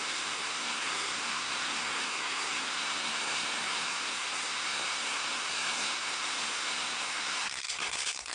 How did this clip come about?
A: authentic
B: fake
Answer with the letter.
B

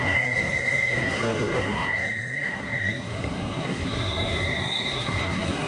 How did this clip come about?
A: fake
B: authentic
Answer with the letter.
A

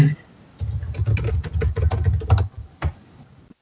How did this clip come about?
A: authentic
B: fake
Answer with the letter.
A